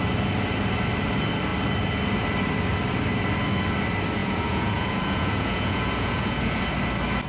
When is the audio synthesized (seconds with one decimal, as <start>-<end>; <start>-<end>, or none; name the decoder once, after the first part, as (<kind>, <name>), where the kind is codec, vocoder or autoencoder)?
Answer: 4.2-6.6 (vocoder, Vocos)